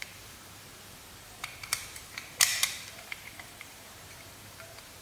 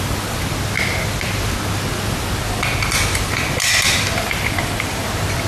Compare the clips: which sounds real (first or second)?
second